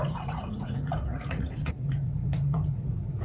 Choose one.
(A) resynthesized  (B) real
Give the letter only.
A